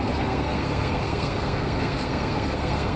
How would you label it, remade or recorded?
remade